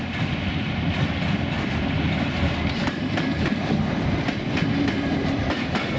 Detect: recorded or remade remade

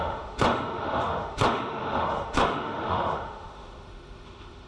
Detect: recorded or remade remade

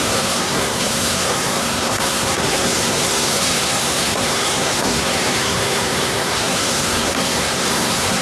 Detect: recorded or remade remade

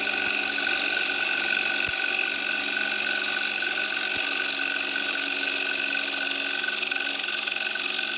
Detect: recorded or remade recorded